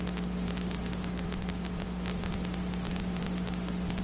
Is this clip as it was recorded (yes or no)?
no